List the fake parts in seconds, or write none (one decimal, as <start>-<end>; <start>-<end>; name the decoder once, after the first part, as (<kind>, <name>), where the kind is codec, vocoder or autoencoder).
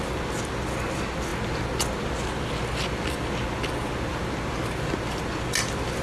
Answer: none